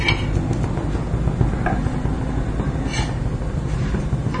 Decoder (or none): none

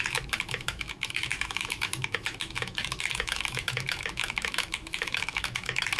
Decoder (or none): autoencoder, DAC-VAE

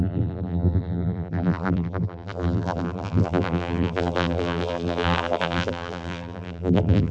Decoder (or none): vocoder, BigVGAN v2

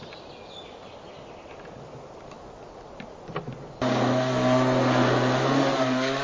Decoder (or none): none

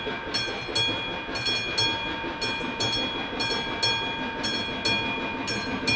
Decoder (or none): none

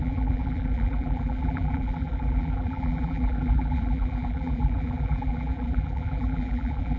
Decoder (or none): vocoder, BigVGAN v2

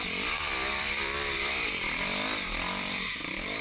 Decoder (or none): vocoder, BigVGAN v2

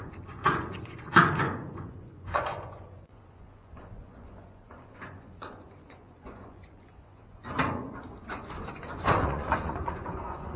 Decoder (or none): vocoder, Vocos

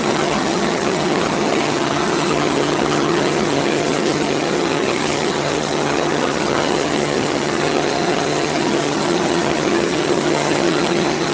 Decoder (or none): vocoder, HiFi-GAN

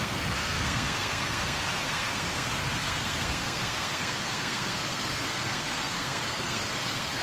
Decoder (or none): codec, SNAC